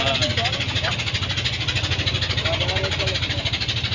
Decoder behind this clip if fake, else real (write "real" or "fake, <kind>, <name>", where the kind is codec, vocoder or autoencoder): real